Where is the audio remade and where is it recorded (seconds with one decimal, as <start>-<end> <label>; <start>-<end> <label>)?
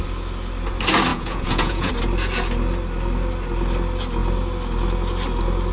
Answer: 0.0-1.1 recorded; 1.1-1.9 remade; 1.9-5.7 recorded